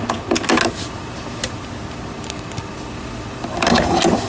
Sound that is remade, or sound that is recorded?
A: recorded